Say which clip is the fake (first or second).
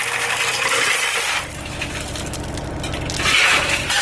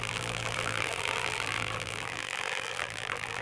second